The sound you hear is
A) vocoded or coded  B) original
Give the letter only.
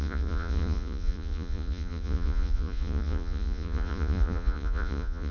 A